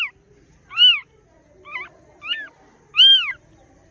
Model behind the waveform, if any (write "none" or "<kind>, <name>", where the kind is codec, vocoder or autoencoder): none